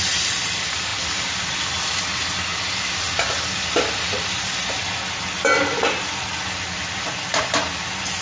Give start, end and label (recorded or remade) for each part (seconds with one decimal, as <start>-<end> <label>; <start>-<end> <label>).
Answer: 0.0-8.2 recorded